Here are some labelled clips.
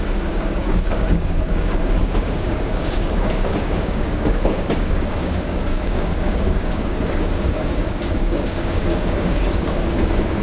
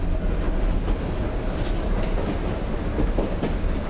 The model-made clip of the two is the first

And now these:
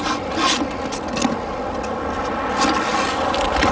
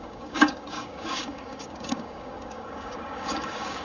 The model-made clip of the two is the second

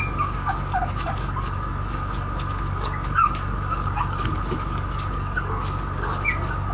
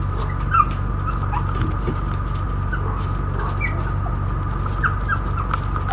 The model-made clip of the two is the first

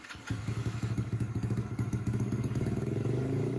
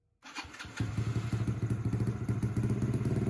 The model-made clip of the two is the first